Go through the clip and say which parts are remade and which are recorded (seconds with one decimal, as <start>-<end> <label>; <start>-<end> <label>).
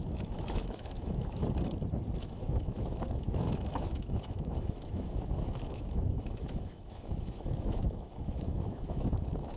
0.0-1.4 remade; 1.4-2.2 recorded; 2.2-9.6 remade